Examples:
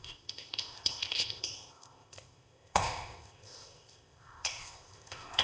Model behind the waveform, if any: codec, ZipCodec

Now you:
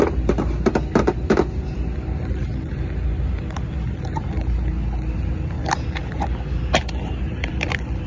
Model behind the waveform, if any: none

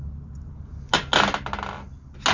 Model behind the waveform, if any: none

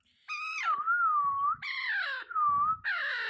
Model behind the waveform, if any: none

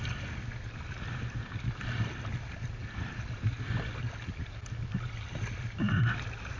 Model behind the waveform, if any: none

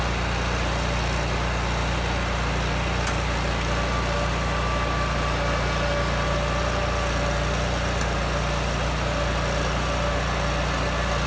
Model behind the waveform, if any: none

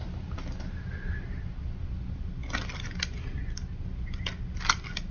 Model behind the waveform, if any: none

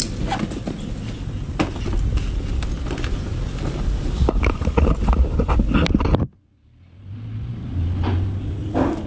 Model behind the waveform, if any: none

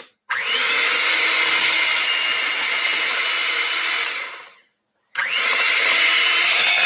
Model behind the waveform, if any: none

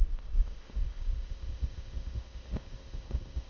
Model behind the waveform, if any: codec, ZipCodec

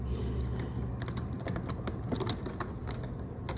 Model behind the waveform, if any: none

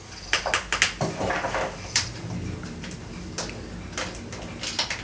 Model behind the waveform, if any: none